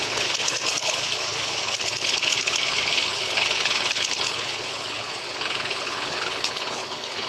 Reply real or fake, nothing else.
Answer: fake